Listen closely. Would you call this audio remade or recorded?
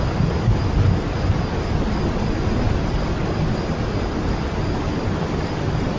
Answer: recorded